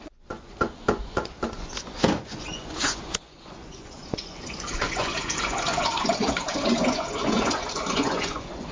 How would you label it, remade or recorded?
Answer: remade